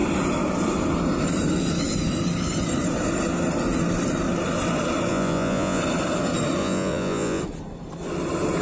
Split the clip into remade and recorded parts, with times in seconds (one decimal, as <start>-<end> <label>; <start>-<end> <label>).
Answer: 0.0-5.1 recorded; 5.1-5.8 remade; 5.8-6.6 recorded; 6.6-7.4 remade; 7.4-8.6 recorded